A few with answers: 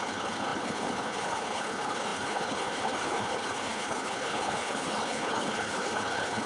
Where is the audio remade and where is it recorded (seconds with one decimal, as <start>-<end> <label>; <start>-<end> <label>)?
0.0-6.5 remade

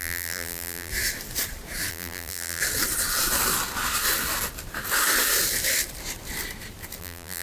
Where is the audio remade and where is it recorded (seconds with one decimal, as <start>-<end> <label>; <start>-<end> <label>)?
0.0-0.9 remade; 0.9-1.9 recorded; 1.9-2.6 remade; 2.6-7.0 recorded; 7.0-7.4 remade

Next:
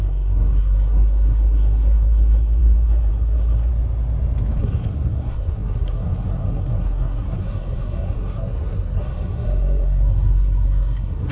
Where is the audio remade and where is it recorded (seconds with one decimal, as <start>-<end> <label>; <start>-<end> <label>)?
0.0-3.7 remade; 3.7-4.6 recorded; 4.6-11.3 remade

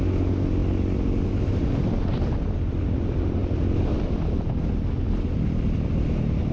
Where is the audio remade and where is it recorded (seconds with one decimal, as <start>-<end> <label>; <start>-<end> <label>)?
0.0-6.5 recorded

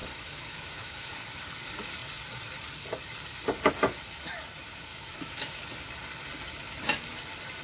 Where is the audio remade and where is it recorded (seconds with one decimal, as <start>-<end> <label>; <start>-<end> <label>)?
0.0-1.1 remade; 1.1-4.9 recorded; 4.9-5.6 remade; 5.6-7.6 recorded

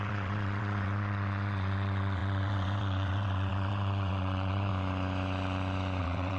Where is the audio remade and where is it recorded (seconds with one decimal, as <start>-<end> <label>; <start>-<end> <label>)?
0.0-4.7 remade; 4.7-6.0 recorded; 6.0-6.4 remade

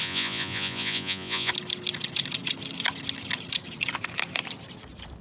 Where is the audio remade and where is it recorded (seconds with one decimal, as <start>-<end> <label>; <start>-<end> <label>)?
0.0-1.5 remade; 1.5-5.2 recorded

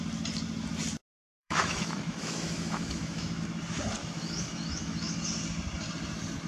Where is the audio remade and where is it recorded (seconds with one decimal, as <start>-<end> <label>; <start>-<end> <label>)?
0.0-1.4 recorded; 1.4-3.4 remade; 3.4-4.0 recorded; 4.0-5.2 remade; 5.2-6.5 recorded